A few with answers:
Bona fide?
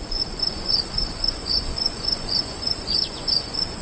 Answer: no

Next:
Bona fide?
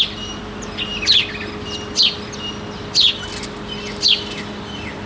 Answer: yes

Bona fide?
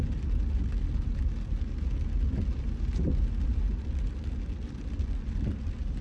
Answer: yes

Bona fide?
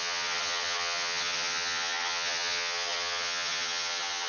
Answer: no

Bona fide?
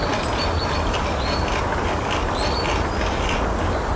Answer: yes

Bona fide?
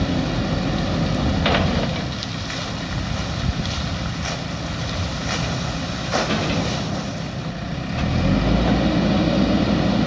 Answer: yes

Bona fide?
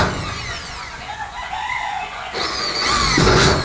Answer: no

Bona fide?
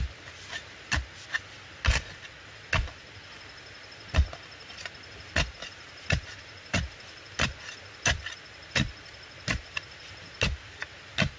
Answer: yes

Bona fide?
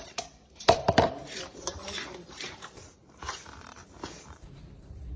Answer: no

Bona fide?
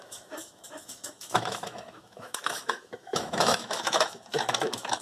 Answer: no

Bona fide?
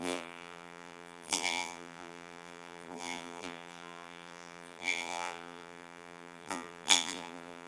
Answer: no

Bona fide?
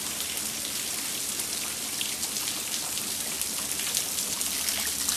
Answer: yes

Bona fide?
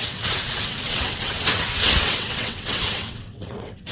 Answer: no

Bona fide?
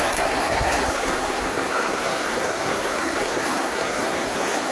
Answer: no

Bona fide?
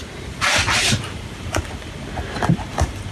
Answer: yes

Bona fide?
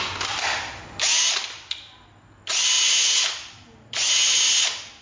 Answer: yes